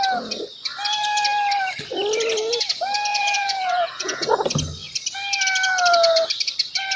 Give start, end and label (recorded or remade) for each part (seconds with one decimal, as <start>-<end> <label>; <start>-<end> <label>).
0.0-3.1 recorded; 3.1-4.3 remade; 4.3-7.0 recorded